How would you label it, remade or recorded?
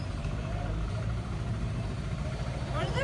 remade